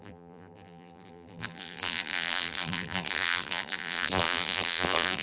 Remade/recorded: remade